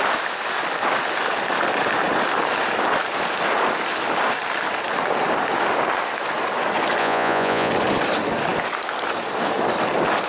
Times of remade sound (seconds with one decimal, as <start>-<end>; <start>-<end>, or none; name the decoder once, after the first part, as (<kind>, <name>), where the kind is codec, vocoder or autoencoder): 7.0-7.7 (vocoder, Vocos)